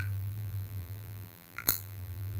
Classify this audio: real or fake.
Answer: fake